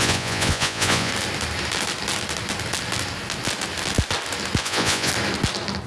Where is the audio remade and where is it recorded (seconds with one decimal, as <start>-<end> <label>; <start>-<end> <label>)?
0.0-1.1 remade; 1.1-4.6 recorded; 4.6-5.1 remade; 5.1-5.9 recorded